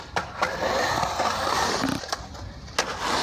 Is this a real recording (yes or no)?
yes